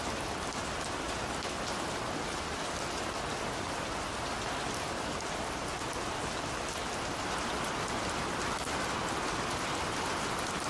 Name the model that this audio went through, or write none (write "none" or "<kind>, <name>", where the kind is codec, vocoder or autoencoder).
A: none